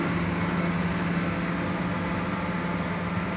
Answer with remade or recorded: recorded